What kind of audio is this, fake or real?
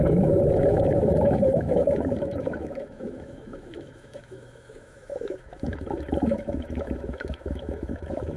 fake